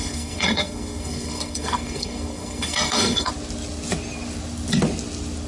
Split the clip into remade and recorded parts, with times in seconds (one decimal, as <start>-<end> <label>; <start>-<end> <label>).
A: 0.0-3.3 remade; 3.3-5.5 recorded